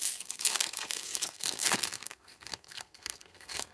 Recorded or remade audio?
remade